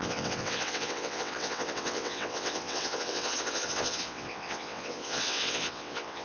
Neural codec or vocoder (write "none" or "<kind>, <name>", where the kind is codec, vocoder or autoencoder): vocoder, WaveNeXt